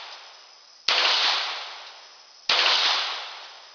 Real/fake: real